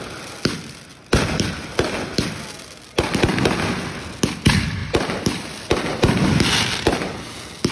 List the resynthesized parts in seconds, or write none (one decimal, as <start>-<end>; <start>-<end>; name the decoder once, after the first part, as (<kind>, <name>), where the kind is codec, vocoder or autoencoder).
4.8-6.4 (vocoder, BigVGAN v2)